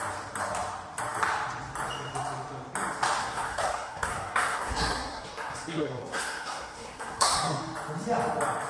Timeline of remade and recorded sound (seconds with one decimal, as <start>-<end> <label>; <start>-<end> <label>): 0.0-3.2 recorded; 3.2-7.6 remade; 7.6-8.7 recorded